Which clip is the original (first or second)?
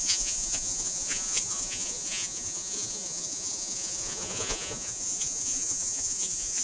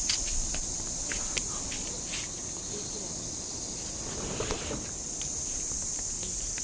second